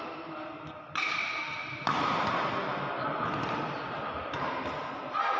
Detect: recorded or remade recorded